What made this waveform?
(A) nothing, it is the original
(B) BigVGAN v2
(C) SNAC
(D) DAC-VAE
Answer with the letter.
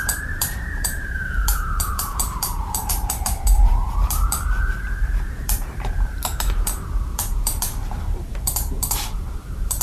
B